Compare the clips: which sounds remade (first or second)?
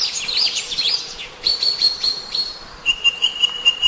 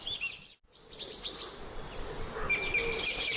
first